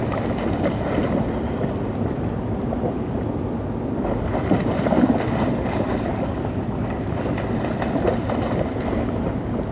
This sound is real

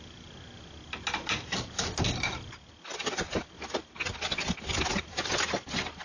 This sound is real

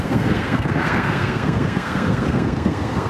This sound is fake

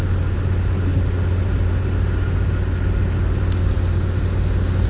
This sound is real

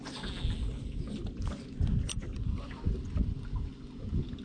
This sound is real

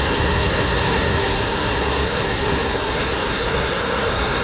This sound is fake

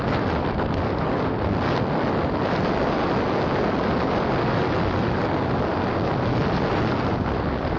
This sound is real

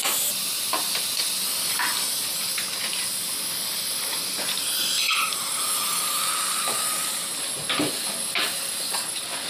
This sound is real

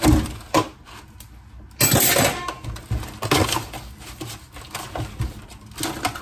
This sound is real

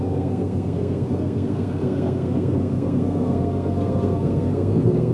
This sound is fake